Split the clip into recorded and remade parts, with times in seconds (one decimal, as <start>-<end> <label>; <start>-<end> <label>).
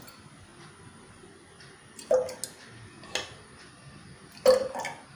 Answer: 0.0-5.2 recorded